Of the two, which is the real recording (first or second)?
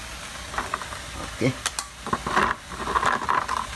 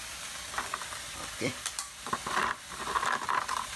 first